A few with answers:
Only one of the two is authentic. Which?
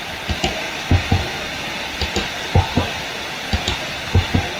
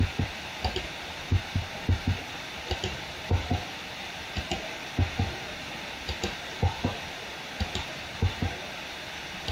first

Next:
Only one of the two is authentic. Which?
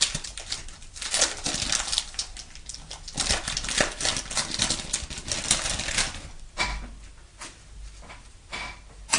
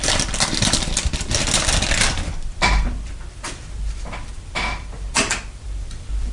first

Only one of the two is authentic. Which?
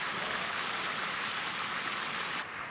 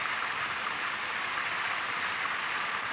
first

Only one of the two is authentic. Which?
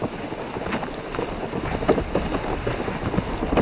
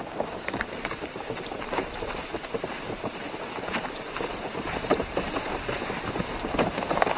first